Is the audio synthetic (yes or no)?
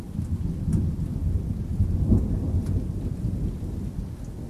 no